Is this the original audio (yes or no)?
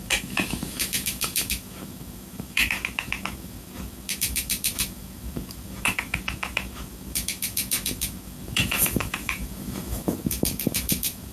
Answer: no